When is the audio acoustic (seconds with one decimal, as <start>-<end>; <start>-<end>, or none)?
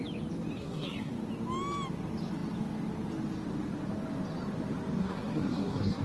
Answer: 0.0-0.6; 1.1-5.0